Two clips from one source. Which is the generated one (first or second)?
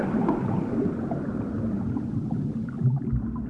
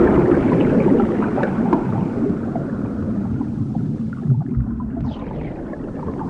second